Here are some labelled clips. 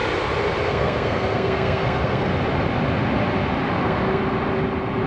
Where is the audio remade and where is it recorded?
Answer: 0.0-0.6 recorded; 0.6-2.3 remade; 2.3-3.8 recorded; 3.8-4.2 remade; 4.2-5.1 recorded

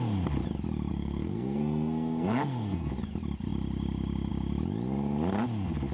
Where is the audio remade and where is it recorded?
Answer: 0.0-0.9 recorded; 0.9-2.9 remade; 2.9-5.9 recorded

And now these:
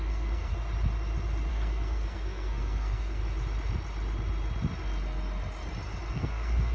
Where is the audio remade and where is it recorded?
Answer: 0.0-0.5 remade; 0.5-1.5 recorded; 1.5-3.2 remade; 3.2-6.1 recorded; 6.1-6.7 remade